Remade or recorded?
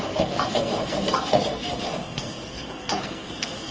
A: remade